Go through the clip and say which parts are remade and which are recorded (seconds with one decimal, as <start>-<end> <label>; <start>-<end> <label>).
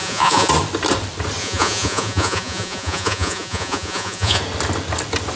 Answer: 0.0-0.5 remade; 0.5-1.4 recorded; 1.4-4.4 remade; 4.4-5.4 recorded